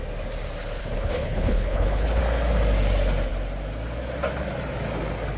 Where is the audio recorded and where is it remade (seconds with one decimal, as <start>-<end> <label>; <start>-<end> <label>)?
0.0-0.8 recorded; 0.8-2.2 remade; 2.2-5.4 recorded